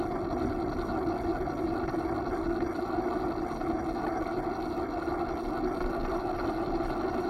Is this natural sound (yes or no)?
yes